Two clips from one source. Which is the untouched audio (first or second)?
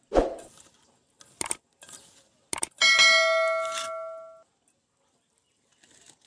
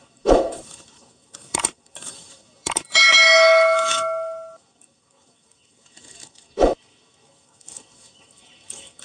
first